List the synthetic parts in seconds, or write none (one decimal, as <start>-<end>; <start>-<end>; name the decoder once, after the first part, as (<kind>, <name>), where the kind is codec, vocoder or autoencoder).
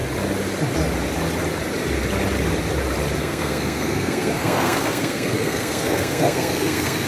3.2-7.1 (codec, SNAC)